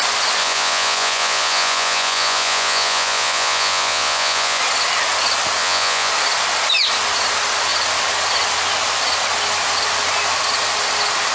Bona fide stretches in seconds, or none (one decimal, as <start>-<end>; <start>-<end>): 0.0-0.4; 4.6-5.6; 6.1-11.3